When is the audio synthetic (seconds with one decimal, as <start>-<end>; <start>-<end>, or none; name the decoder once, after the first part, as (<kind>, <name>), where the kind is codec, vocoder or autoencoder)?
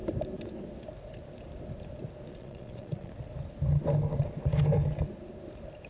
2.3-3.1 (vocoder, Vocos)